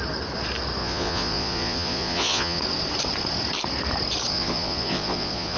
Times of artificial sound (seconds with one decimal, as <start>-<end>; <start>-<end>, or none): 0.8-2.6; 4.3-5.6